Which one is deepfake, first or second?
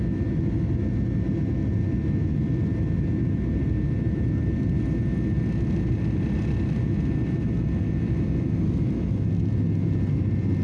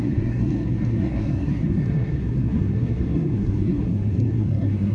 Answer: second